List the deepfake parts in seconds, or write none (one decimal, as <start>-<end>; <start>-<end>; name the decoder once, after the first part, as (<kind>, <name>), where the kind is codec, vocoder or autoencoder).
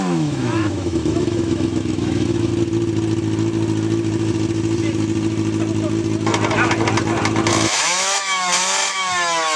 0.0-2.5 (autoencoder, DAC-VAE); 7.5-9.6